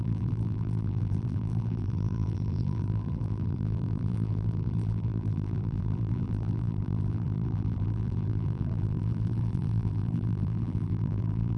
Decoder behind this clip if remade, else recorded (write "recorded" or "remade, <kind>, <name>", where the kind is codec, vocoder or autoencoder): remade, vocoder, BigVGAN v2